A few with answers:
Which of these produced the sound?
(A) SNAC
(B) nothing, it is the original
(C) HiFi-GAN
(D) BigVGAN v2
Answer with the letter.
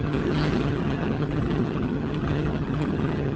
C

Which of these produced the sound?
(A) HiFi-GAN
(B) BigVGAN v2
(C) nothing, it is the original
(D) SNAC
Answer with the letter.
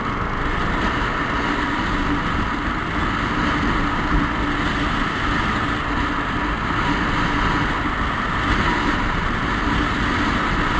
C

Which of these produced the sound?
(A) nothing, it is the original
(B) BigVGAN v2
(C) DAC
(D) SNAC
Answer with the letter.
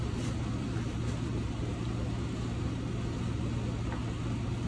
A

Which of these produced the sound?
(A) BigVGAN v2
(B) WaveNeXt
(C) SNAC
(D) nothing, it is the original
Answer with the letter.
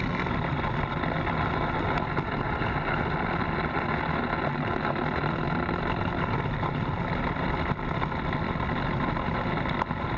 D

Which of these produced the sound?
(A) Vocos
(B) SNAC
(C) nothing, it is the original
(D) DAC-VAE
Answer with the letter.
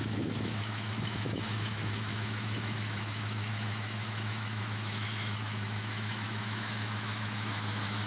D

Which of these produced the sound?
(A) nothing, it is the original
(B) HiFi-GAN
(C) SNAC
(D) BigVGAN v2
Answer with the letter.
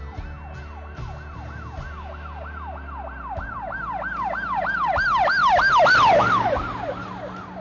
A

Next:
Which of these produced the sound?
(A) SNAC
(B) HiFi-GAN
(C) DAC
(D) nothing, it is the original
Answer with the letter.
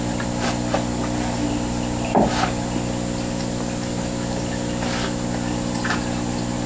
D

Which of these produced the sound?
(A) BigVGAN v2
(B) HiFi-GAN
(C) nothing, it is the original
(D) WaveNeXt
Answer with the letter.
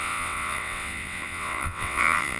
D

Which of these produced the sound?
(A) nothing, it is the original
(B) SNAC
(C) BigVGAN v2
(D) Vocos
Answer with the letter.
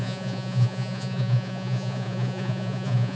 D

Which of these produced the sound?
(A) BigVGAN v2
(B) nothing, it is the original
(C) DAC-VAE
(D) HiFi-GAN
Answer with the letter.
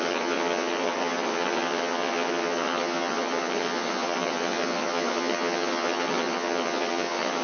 D